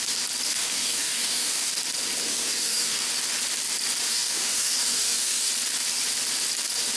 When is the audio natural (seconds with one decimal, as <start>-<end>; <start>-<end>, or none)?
0.0-0.5; 1.7-2.3; 3.1-4.1; 5.5-7.0